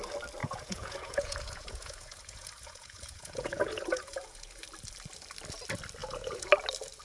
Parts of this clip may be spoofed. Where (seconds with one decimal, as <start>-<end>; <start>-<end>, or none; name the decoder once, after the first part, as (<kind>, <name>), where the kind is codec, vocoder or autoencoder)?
0.4-4.6 (vocoder, Vocos); 6.0-6.5